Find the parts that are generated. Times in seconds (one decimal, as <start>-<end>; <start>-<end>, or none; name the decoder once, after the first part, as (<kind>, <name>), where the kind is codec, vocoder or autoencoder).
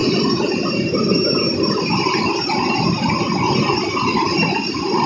none